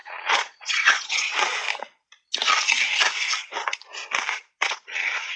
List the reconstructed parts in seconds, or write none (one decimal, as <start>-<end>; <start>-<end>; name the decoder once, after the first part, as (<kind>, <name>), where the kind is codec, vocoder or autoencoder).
0.0-1.6 (vocoder, Vocos); 4.6-5.4